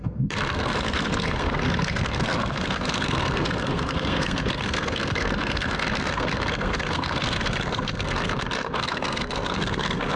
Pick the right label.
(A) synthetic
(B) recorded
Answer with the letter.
A